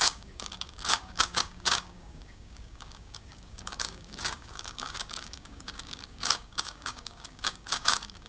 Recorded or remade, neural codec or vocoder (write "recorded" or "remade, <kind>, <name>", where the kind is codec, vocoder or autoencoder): remade, codec, DAC